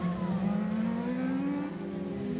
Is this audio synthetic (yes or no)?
no